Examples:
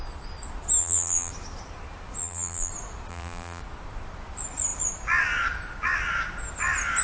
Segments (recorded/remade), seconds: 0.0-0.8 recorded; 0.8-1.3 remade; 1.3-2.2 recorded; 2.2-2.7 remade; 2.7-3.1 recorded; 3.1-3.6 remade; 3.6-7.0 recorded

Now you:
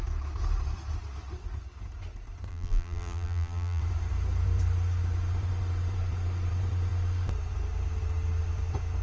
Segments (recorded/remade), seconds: 0.0-2.5 recorded; 2.5-3.8 remade; 3.8-9.0 recorded

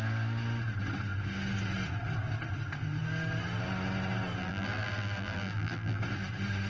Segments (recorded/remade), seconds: 0.0-4.4 recorded; 4.4-6.0 remade; 6.0-6.7 recorded